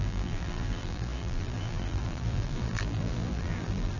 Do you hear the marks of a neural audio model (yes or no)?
yes